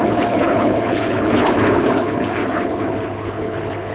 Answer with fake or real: fake